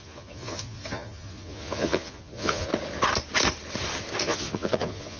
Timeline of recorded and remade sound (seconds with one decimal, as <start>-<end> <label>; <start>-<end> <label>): 0.0-2.7 remade; 2.7-4.2 recorded; 4.2-5.2 remade